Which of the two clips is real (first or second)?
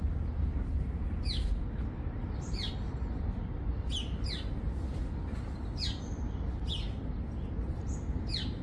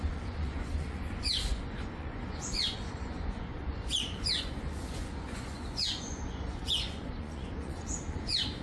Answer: first